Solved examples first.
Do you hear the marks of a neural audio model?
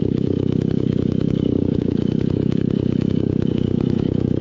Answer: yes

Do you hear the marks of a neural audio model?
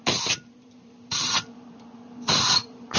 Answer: yes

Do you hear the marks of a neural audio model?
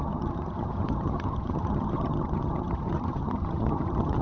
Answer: yes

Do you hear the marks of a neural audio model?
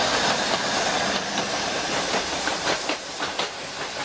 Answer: no